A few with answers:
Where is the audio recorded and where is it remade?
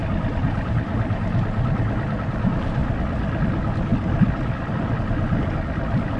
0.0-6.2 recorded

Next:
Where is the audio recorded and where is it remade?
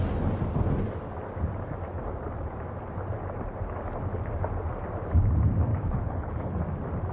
0.0-5.7 recorded; 5.7-6.6 remade; 6.6-7.1 recorded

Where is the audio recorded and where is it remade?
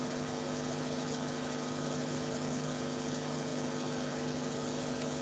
0.0-5.2 remade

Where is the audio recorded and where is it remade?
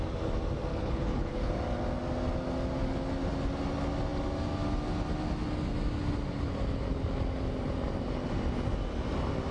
0.0-0.7 recorded; 0.7-1.5 remade; 1.5-9.5 recorded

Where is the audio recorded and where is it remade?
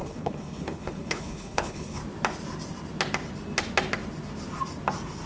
0.0-2.0 remade; 2.0-5.3 recorded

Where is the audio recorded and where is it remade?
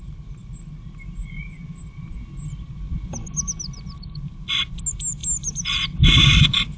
0.0-6.8 recorded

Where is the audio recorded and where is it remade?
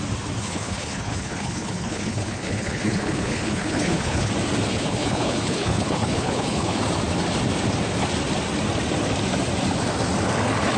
0.0-0.4 recorded; 0.4-4.3 remade; 4.3-4.7 recorded; 4.7-6.8 remade; 6.8-10.8 recorded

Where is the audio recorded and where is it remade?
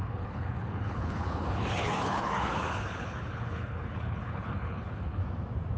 0.0-5.2 remade; 5.2-5.8 recorded